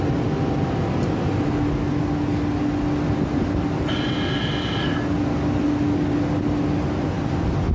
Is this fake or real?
real